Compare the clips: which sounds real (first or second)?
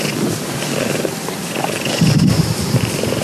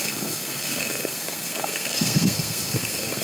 first